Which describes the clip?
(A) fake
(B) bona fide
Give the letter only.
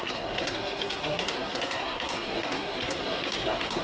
A